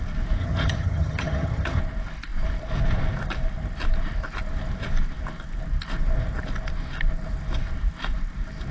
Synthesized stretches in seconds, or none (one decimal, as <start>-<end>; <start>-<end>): 0.4-1.8